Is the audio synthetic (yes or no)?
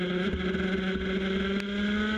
no